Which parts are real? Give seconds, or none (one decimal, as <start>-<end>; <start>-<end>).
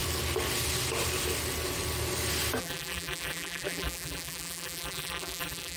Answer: 0.0-2.6